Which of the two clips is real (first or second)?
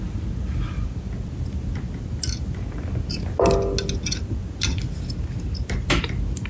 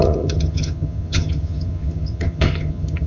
first